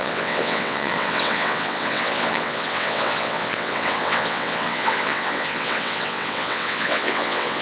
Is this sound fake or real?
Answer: fake